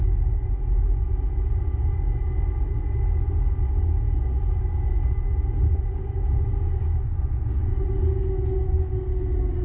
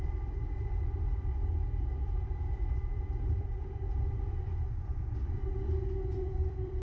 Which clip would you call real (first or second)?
first